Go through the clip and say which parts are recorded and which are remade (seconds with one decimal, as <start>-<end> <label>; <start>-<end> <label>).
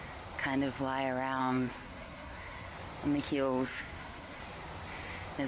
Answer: 0.0-1.4 recorded; 1.4-2.7 remade; 2.7-3.7 recorded; 3.7-4.4 remade; 4.4-5.5 recorded